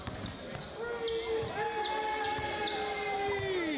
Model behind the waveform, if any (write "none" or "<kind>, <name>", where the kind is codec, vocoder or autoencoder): none